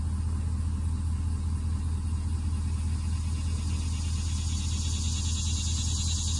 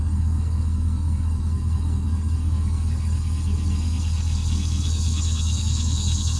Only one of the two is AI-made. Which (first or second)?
second